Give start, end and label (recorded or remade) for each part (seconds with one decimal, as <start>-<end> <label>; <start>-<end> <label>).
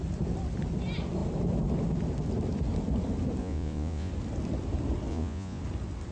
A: 0.0-3.4 recorded; 3.4-4.1 remade; 4.1-5.1 recorded; 5.1-5.6 remade; 5.6-6.1 recorded